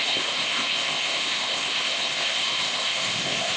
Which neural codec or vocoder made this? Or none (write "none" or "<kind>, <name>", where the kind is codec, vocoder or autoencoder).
codec, ZipCodec